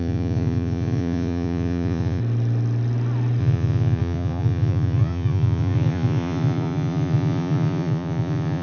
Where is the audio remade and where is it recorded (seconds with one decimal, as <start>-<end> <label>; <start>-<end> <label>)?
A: 0.0-2.2 remade; 2.2-3.4 recorded; 3.4-8.6 remade